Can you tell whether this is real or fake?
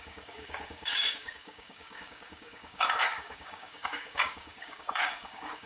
fake